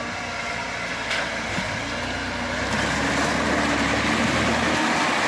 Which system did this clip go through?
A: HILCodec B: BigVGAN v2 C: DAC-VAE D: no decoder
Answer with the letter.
D